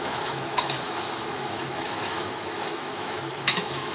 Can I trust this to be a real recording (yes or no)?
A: no